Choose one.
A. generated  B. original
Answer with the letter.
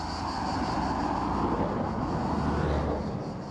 B